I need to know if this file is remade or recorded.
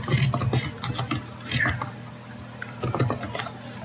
recorded